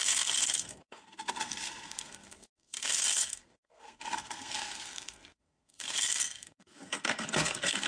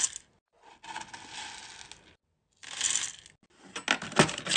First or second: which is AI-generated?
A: first